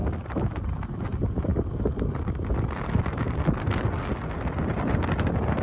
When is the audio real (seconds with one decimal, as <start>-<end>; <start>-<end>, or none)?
0.0-5.6